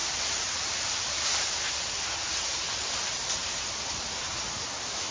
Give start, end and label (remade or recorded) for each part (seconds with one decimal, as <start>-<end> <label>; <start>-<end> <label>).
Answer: 0.0-1.7 remade; 1.7-5.1 recorded